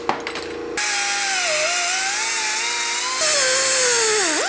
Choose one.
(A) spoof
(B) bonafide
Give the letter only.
B